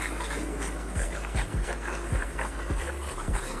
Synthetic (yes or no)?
yes